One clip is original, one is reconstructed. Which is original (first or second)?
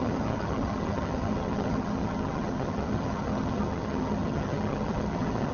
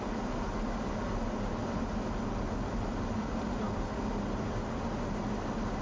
second